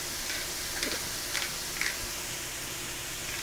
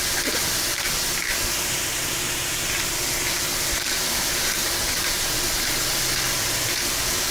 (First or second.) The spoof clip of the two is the second